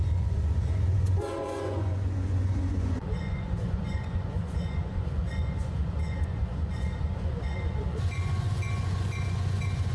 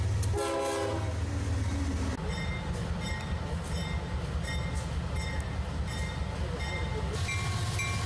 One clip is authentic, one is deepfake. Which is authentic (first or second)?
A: second